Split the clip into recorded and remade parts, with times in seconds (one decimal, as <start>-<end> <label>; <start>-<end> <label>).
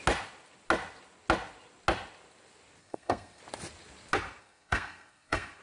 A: 0.0-2.8 recorded; 2.8-3.4 remade; 3.4-4.4 recorded; 4.4-5.6 remade